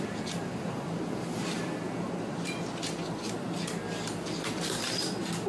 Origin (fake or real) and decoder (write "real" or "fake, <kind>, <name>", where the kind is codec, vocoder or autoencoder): real